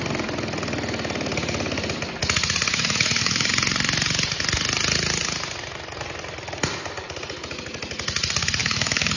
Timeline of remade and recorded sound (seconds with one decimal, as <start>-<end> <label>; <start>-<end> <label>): 0.0-2.7 recorded; 2.7-3.5 remade; 3.5-8.6 recorded; 8.6-9.2 remade

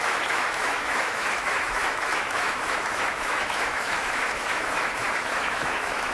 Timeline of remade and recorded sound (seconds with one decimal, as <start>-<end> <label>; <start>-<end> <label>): 0.0-6.1 remade